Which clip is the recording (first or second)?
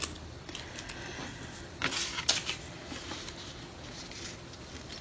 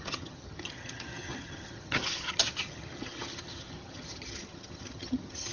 first